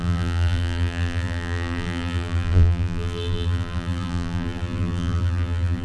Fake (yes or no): yes